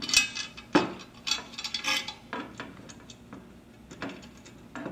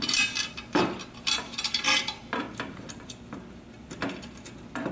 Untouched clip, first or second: first